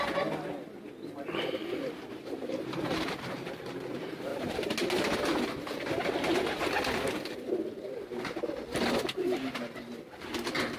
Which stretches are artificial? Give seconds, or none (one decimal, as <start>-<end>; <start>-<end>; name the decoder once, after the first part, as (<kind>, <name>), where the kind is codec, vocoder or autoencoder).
2.1-3.1 (vocoder, BigVGAN v2)

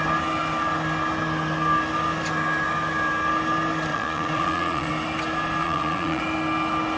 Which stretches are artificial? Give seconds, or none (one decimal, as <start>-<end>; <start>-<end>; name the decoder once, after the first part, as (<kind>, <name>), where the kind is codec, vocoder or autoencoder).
3.9-4.9 (vocoder, Vocos); 5.6-6.2

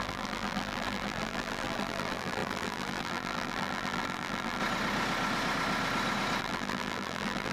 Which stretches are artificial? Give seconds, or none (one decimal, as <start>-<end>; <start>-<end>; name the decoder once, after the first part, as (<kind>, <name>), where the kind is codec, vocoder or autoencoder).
0.0-4.6 (vocoder, BigVGAN v2); 6.4-7.5